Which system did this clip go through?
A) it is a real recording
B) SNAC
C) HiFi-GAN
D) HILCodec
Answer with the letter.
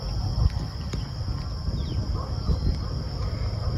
A